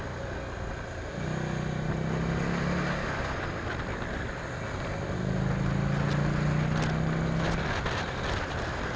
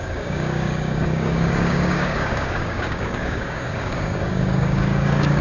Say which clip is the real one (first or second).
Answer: first